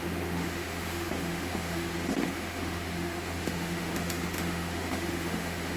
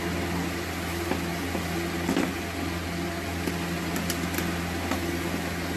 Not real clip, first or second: first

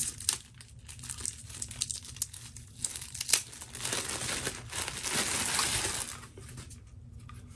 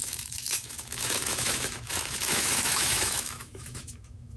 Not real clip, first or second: second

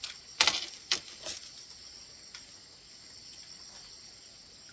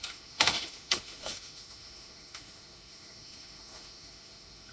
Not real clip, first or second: second